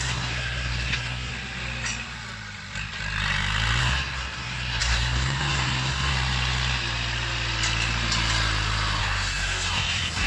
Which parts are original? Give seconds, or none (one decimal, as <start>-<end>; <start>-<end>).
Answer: 1.3-3.8; 6.1-9.0